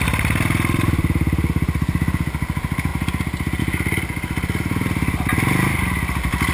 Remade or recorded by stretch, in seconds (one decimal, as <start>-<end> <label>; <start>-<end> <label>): 0.0-6.5 recorded